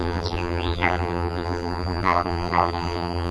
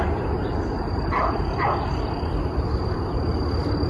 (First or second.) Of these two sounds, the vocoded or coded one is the first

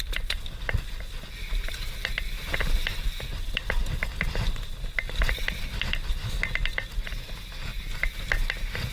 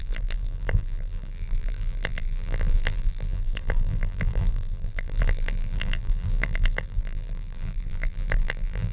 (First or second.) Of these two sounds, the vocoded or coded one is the second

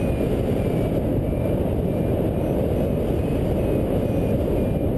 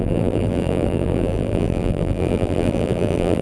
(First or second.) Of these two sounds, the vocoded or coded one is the second